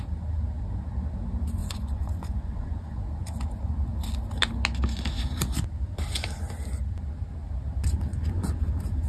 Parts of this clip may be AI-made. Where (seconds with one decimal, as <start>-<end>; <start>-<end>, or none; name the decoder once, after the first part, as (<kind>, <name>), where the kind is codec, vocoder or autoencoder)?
1.6-3.0 (vocoder, Vocos); 8.1-8.7